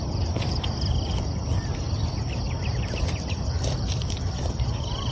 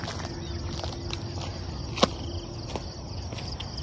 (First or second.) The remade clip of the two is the first